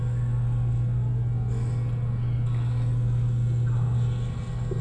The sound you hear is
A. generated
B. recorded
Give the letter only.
B